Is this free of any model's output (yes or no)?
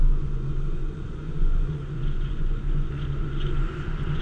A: no